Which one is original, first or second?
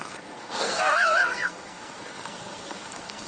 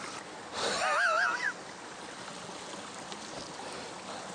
second